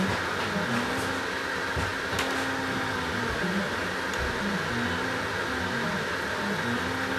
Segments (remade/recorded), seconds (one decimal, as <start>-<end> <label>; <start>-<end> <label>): 0.0-7.2 recorded